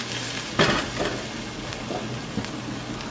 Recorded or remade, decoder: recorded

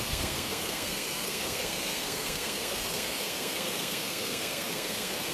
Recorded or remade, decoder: remade, codec, SNAC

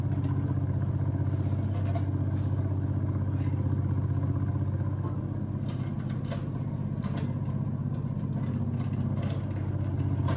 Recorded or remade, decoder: recorded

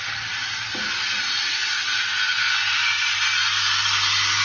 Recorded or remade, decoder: recorded